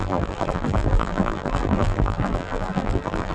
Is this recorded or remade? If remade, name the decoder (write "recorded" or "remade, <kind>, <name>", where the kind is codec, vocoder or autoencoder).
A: remade, vocoder, BigVGAN v2